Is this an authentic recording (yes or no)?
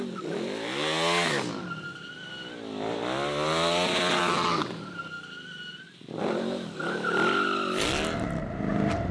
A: yes